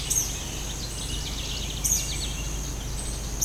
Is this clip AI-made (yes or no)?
no